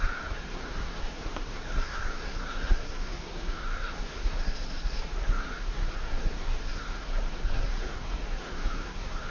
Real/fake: fake